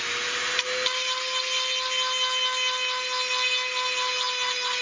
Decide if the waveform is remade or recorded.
recorded